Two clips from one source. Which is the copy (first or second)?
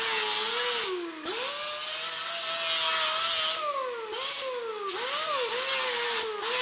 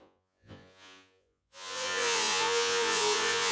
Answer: second